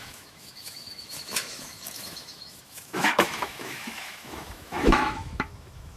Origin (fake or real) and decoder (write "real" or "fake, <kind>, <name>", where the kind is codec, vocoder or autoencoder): fake, autoencoder, DAC-VAE